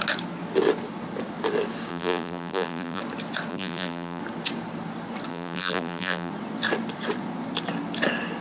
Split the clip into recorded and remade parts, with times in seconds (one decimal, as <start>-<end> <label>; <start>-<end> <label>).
0.0-1.9 recorded; 1.9-3.0 remade; 3.0-3.5 recorded; 3.5-4.2 remade; 4.2-5.3 recorded; 5.3-6.3 remade; 6.3-8.4 recorded